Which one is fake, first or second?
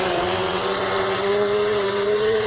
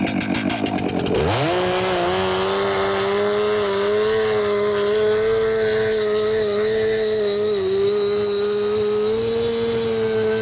first